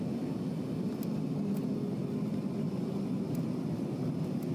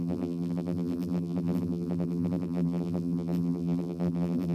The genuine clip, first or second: first